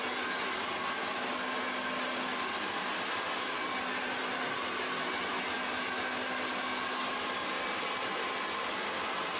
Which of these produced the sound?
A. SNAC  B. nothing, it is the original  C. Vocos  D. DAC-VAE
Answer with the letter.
B